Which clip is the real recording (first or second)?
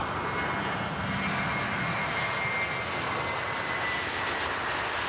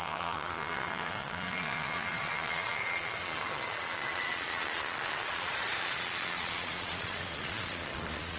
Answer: first